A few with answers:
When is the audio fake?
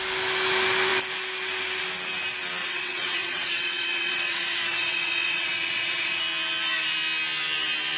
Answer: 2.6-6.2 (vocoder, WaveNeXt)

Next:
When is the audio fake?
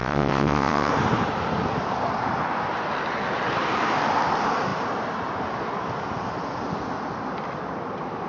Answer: 0.0-0.9 (vocoder, WaveNeXt)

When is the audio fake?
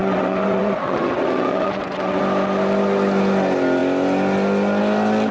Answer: 0.0-2.2 (vocoder, WaveNeXt)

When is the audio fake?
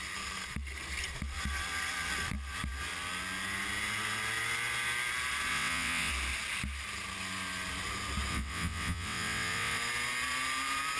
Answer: 5.5-6.1 (vocoder, WaveNeXt); 8.3-9.8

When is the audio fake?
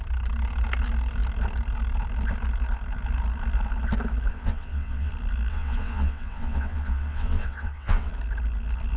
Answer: 4.3-5.1 (vocoder, WaveNeXt); 5.5-8.1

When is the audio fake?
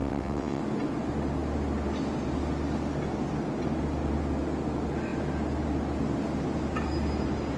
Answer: 0.0-0.6 (vocoder, WaveNeXt)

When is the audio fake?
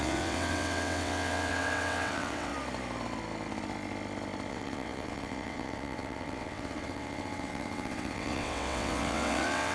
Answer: 0.0-2.5 (vocoder, WaveNeXt); 4.5-9.7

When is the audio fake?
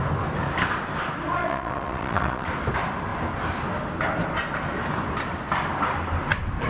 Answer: 1.4-2.5 (vocoder, WaveNeXt)